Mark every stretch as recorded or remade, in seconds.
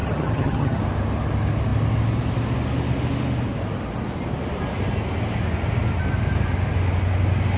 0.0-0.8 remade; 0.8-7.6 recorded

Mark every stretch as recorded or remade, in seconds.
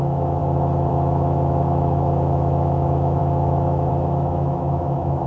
0.0-0.4 remade; 0.4-0.9 recorded; 0.9-5.3 remade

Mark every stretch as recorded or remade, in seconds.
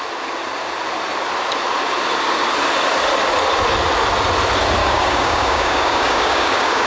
0.0-4.8 recorded; 4.8-6.9 remade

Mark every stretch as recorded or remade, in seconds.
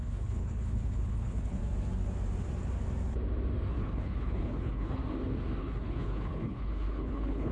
0.0-1.6 remade; 1.6-3.7 recorded; 3.7-5.0 remade; 5.0-5.6 recorded; 5.6-7.5 remade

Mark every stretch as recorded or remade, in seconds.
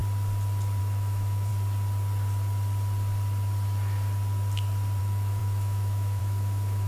0.0-0.8 recorded; 0.8-1.5 remade; 1.5-5.0 recorded; 5.0-6.9 remade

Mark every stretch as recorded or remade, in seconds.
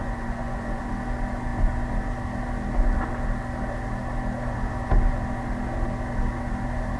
0.0-0.8 remade; 0.8-7.0 recorded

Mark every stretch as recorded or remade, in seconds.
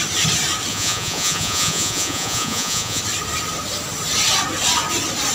0.0-0.7 recorded; 0.7-3.0 remade; 3.0-5.3 recorded